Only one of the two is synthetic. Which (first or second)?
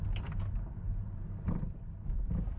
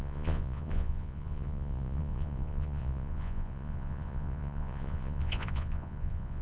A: second